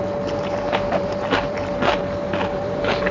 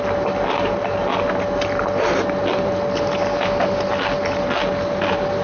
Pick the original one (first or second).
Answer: second